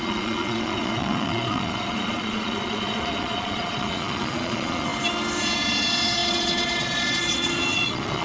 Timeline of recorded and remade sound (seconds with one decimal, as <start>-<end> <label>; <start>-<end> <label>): 0.0-4.9 remade; 4.9-5.4 recorded; 5.4-8.2 remade